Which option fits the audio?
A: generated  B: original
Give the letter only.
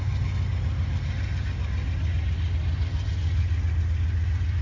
B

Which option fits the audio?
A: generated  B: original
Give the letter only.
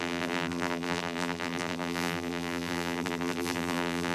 A